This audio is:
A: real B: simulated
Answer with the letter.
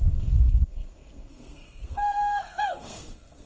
B